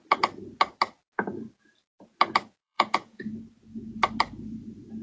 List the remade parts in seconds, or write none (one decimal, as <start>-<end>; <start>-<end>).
2.6-3.3